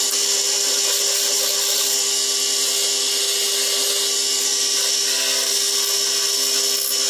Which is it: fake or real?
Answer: real